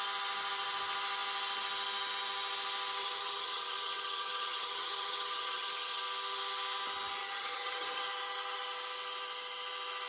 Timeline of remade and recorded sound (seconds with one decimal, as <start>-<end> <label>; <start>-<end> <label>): 0.0-3.0 recorded; 3.0-6.0 remade; 6.0-7.2 recorded; 7.2-8.0 remade; 8.0-10.1 recorded